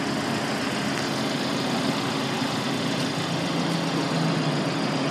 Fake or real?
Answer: real